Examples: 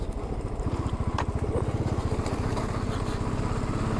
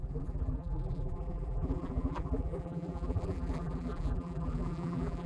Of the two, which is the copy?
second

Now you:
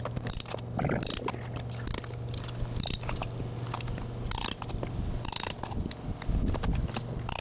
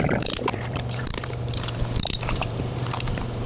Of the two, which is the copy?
second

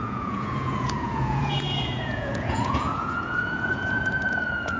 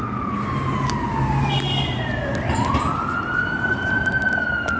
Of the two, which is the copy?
first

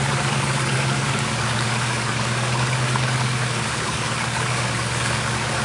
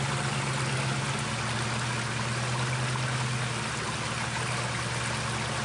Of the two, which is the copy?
first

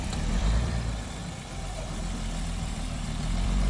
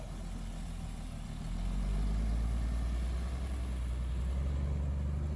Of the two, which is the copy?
first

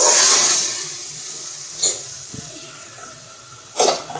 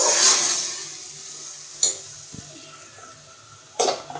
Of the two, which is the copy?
first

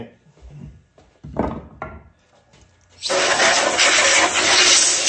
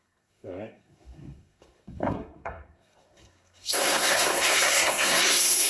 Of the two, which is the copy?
second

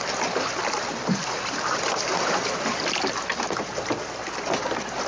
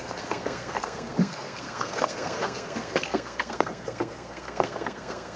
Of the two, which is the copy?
second